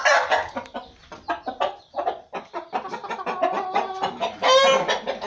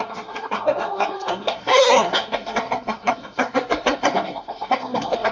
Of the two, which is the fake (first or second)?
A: second